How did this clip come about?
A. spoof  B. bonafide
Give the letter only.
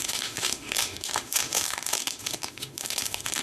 A